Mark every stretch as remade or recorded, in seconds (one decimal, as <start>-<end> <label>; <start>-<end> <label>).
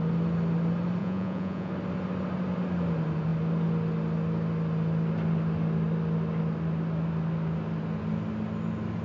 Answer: 0.0-1.0 recorded; 1.0-1.7 remade; 1.7-9.0 recorded